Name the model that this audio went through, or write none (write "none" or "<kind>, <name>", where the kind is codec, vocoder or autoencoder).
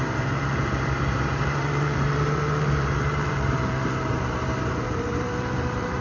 vocoder, BigVGAN v2